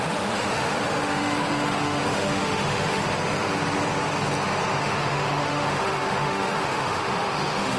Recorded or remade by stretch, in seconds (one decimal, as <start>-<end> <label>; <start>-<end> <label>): 0.0-3.0 remade; 3.0-4.8 recorded; 4.8-7.8 remade